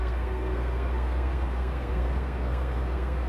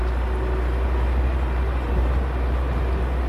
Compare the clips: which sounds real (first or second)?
second